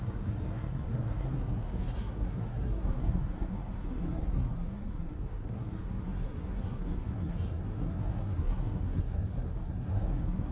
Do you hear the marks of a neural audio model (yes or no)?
yes